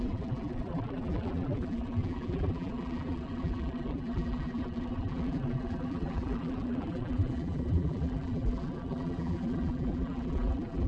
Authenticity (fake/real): fake